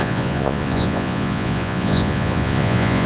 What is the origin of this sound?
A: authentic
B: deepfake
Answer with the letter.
B